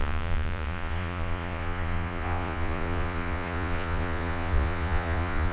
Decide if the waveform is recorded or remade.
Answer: remade